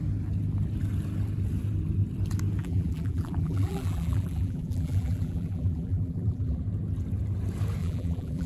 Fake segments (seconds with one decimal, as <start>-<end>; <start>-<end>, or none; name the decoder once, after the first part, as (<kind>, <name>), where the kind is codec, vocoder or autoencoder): 2.6-6.6 (vocoder, BigVGAN v2); 7.8-8.5